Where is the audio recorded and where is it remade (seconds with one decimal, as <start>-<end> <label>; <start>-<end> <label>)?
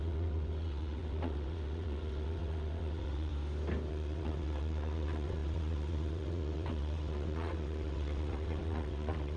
0.0-3.3 remade; 3.3-3.9 recorded; 3.9-9.4 remade